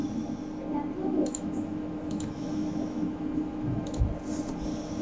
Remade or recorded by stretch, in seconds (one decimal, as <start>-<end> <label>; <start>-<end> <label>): 0.0-1.0 recorded; 1.0-4.0 remade; 4.0-5.0 recorded